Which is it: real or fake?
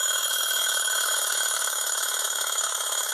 fake